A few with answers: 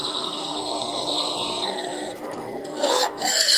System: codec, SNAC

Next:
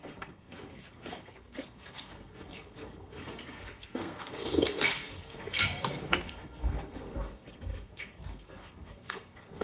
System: codec, SNAC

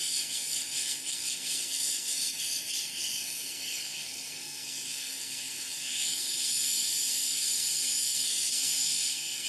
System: codec, SNAC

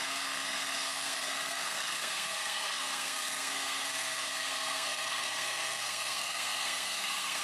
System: codec, SNAC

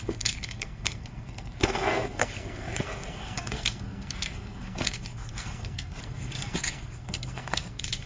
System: codec, SNAC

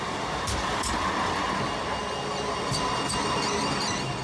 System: none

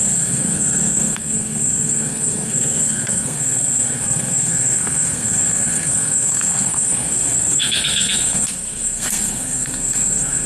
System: codec, SNAC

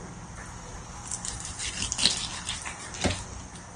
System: none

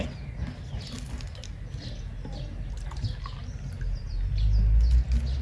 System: none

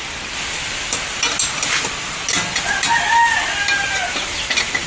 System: none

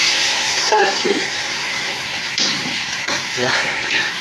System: codec, SNAC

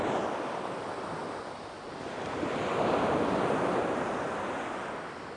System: none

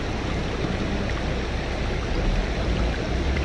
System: none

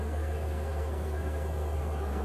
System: codec, SNAC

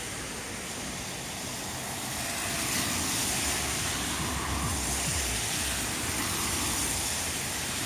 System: none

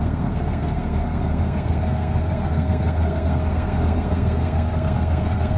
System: codec, SNAC